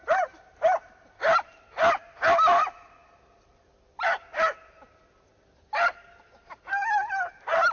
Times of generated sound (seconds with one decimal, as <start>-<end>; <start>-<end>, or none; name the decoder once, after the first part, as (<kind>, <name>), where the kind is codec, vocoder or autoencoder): none